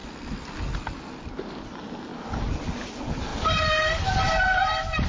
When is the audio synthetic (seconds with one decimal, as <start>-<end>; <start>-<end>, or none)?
none